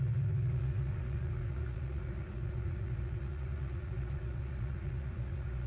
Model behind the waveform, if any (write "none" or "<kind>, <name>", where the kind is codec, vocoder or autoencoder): vocoder, Vocos